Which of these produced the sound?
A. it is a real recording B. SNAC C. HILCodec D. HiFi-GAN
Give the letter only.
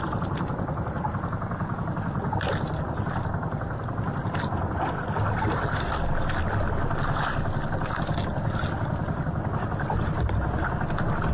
A